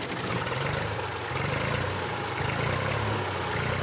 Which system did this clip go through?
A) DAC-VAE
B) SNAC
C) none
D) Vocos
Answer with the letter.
C